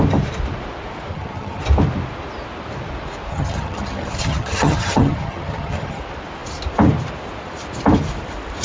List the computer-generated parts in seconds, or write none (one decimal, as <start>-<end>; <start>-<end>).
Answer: 1.1-1.6; 3.3-6.0